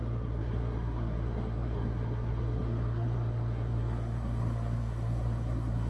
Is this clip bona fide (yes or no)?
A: no